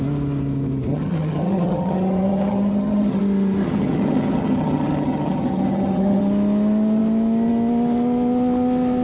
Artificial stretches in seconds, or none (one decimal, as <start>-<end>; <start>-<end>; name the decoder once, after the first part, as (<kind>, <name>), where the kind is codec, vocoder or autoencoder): 0.9-3.2 (vocoder, HiFi-GAN); 3.6-6.2